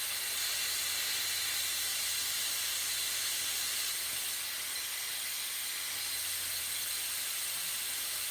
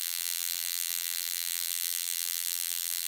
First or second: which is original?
first